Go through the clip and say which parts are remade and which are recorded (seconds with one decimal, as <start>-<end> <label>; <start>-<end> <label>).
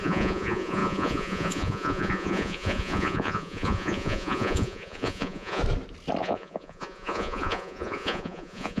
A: 0.0-5.6 remade; 5.6-6.2 recorded; 6.2-8.8 remade